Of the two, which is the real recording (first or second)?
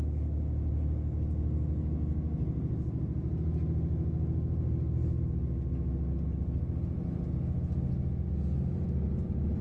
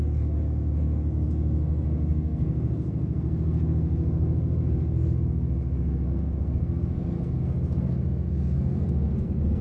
first